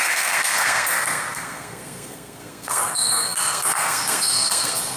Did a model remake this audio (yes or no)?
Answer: yes